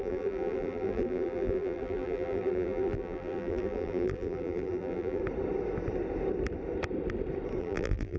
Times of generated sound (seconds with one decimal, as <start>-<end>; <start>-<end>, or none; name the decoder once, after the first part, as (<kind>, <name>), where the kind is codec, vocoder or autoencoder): 0.0-5.2 (vocoder, BigVGAN v2); 7.6-8.2